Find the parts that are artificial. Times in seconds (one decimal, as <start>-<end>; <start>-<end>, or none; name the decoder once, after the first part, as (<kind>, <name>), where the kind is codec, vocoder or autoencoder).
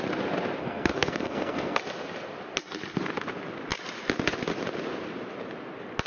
0.6-1.8 (codec, SNAC)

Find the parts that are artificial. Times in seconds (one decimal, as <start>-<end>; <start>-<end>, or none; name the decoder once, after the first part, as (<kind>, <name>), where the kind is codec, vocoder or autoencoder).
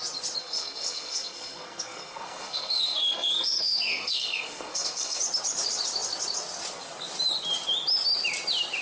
0.4-5.2 (codec, SNAC)